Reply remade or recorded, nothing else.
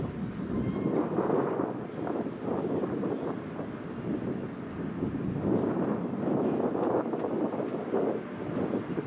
recorded